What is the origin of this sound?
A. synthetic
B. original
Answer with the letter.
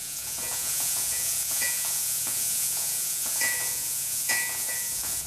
A